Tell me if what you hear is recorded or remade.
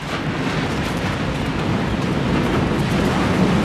recorded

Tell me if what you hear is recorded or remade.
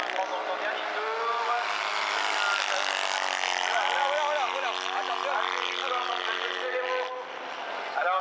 recorded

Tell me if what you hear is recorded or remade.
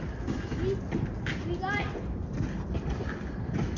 recorded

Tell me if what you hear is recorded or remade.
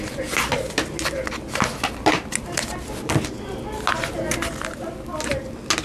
recorded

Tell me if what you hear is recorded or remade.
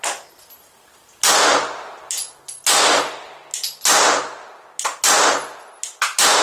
recorded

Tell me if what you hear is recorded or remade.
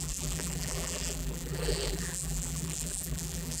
remade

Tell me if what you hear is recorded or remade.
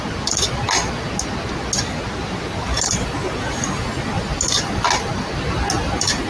recorded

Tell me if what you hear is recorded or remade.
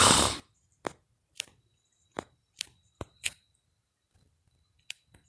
recorded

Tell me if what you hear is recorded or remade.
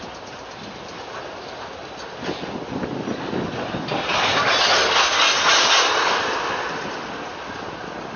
recorded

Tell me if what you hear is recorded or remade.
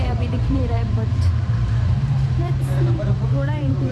remade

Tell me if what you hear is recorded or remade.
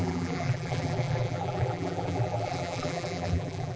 remade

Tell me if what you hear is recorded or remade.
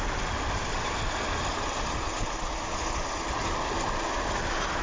recorded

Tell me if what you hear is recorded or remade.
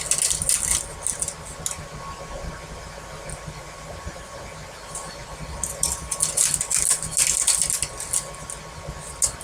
recorded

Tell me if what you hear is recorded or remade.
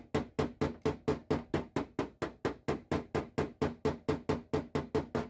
recorded